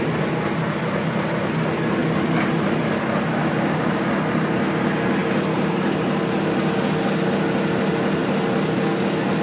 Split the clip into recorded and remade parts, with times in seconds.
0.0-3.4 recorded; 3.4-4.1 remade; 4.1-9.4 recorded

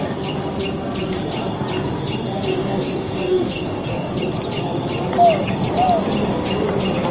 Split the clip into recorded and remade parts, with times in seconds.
0.0-2.5 recorded; 2.5-4.1 remade; 4.1-7.1 recorded

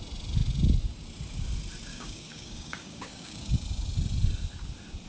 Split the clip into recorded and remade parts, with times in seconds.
0.0-1.9 recorded; 1.9-3.5 remade; 3.5-5.1 recorded

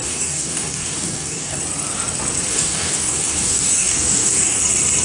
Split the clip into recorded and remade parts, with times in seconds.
0.0-1.6 remade; 1.6-2.5 recorded; 2.5-4.6 remade; 4.6-5.0 recorded

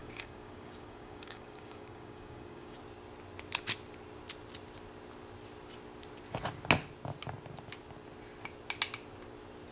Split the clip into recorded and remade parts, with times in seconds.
0.0-2.8 remade; 2.8-9.7 recorded

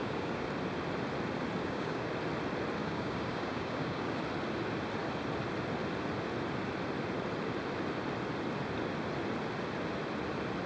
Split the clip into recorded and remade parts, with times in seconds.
0.0-0.5 remade; 0.5-1.6 recorded; 1.6-2.1 remade; 2.1-2.8 recorded; 2.8-4.2 remade; 4.2-10.7 recorded

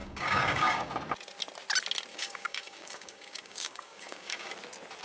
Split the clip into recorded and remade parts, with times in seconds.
0.0-0.9 remade; 0.9-2.1 recorded; 2.1-4.5 remade; 4.5-5.0 recorded